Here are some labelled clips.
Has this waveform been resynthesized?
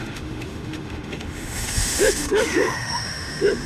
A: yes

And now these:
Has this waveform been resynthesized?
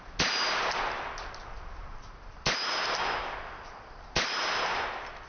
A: no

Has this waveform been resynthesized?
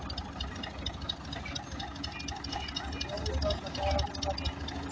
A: no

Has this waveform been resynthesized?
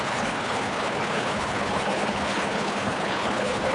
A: yes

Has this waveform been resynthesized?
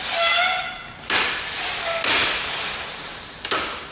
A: no